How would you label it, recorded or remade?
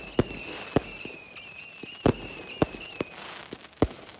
recorded